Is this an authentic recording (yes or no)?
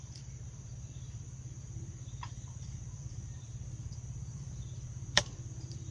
no